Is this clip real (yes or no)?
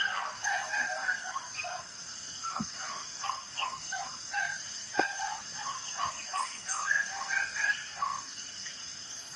no